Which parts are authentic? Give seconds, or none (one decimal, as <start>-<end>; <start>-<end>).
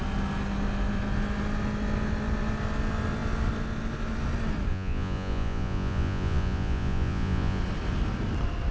0.0-4.7; 7.6-8.7